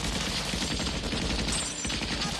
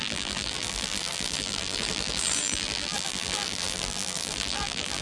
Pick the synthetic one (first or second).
second